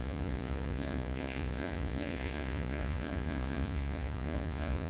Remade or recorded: remade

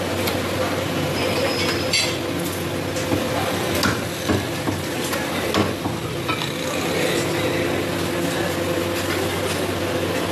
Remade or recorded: recorded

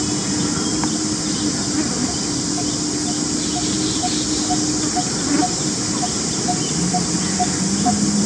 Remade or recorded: recorded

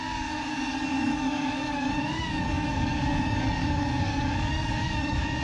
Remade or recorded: remade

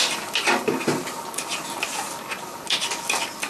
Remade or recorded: recorded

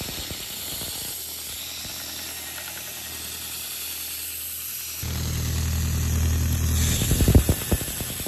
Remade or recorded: recorded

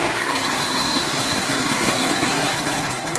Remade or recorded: remade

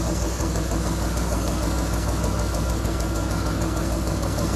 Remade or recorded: remade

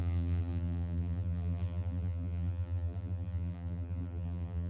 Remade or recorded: remade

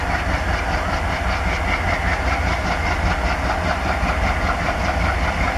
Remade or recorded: recorded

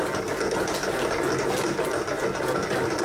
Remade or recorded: recorded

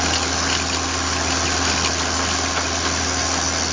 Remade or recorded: recorded